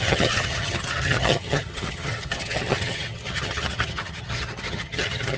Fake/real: fake